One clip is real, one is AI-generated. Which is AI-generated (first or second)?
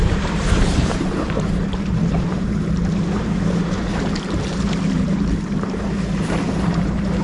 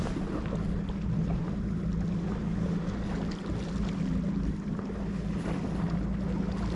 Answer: first